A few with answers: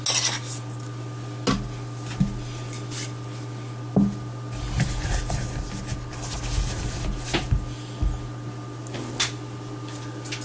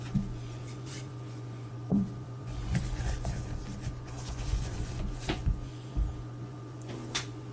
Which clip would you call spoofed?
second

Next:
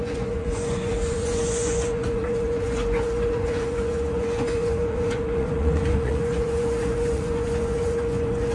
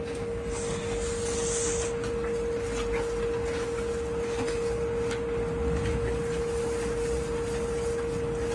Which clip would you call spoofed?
first